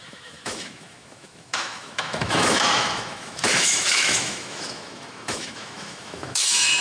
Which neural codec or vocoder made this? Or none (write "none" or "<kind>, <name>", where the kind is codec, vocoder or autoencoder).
autoencoder, DAC-VAE